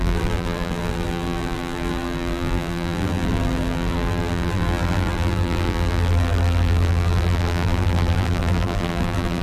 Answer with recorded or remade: remade